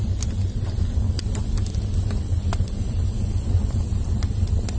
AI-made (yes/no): no